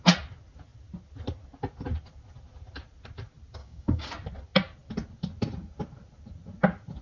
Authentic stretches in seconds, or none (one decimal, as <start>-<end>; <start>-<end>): 0.0-3.6; 4.1-7.0